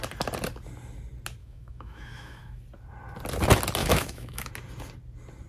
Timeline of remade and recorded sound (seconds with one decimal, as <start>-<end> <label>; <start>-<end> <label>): 0.0-1.4 recorded; 1.4-2.6 remade; 2.6-3.8 recorded; 3.8-4.5 remade; 4.5-5.5 recorded